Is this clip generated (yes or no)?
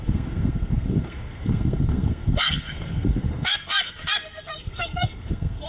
yes